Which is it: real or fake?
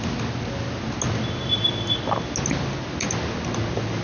real